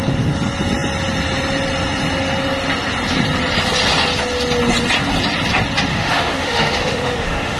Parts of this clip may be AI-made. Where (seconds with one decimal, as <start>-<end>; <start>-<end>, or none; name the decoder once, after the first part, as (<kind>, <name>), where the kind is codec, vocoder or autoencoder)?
5.9-7.6 (autoencoder, DAC-VAE)

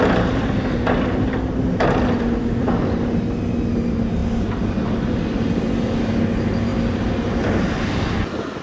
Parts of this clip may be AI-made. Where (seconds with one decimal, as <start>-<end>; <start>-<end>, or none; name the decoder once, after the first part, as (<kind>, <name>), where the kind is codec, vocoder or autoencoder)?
none

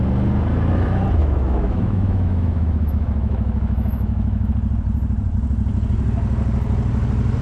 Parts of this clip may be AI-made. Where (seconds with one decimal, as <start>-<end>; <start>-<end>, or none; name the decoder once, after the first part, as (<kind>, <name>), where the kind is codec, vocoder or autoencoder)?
1.2-4.5 (autoencoder, DAC-VAE)

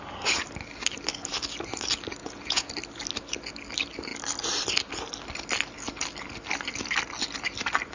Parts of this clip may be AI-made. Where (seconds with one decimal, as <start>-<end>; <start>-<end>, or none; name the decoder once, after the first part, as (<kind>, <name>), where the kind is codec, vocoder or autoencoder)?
2.2-2.7 (vocoder, Vocos)